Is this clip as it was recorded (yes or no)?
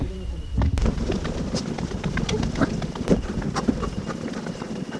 yes